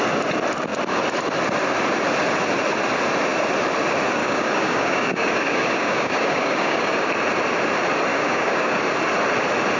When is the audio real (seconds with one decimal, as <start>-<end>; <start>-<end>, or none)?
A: 0.0-4.2; 7.0-8.1; 8.8-9.8